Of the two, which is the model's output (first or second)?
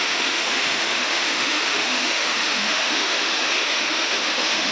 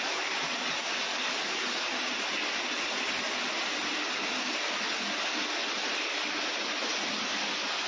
first